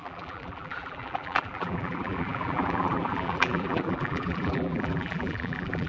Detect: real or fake fake